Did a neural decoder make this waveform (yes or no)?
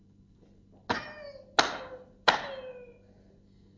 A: no